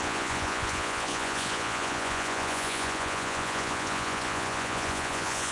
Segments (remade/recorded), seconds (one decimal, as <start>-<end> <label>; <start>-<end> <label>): 0.0-5.5 remade